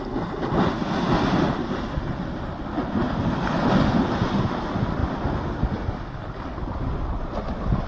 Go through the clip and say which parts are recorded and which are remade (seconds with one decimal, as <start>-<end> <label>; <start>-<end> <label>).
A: 0.0-7.9 recorded